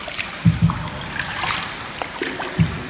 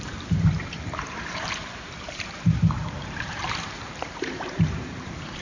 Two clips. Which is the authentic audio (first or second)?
first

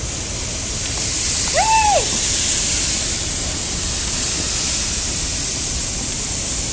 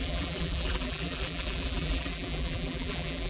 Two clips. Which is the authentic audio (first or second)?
first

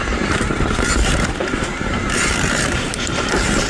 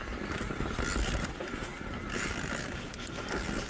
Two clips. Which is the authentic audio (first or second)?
second